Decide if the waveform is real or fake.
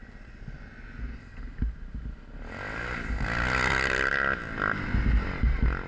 real